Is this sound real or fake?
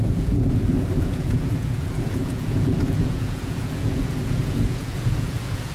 fake